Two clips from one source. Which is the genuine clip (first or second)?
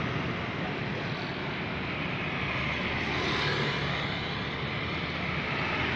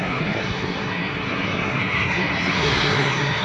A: first